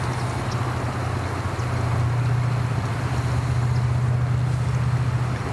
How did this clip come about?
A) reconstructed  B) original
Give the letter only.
B